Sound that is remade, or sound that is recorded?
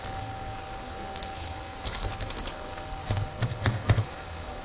remade